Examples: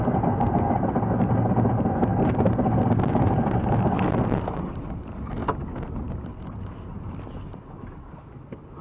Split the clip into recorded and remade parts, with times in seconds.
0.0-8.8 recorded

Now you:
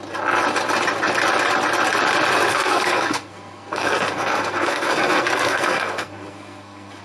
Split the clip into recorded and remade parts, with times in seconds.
0.0-2.5 recorded; 2.5-7.0 remade

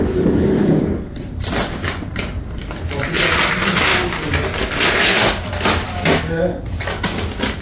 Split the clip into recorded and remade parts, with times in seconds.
0.0-7.6 recorded

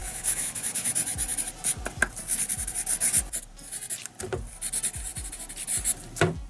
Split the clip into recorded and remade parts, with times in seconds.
0.0-0.9 remade; 0.9-6.5 recorded

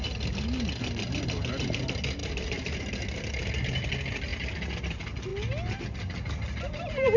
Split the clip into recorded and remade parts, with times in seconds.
0.0-2.2 recorded; 2.2-2.8 remade; 2.8-7.2 recorded

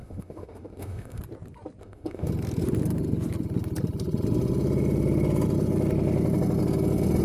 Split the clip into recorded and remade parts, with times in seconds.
0.0-1.2 remade; 1.2-1.8 recorded; 1.8-2.3 remade; 2.3-7.2 recorded